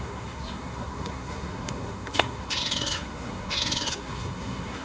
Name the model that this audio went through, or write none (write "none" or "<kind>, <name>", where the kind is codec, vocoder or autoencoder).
codec, SNAC